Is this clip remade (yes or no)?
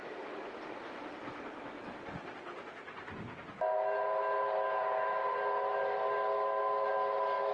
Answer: no